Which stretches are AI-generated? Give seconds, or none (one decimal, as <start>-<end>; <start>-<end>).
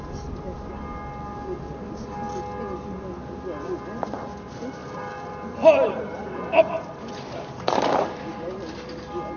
4.8-8.4